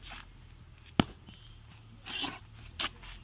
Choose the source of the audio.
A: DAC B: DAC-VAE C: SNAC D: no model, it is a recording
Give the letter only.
D